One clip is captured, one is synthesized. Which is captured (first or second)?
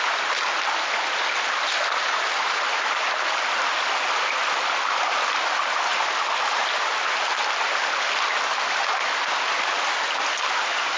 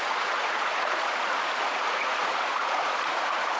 first